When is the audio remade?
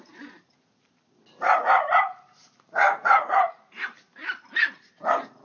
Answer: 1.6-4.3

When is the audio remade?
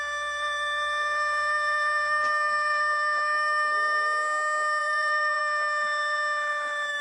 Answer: 4.8-5.4